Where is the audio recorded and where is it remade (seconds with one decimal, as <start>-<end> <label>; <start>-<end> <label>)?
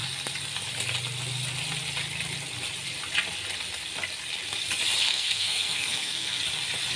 0.0-5.0 recorded; 5.0-6.4 remade; 6.4-7.0 recorded